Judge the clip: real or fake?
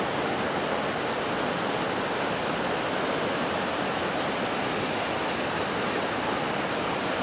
real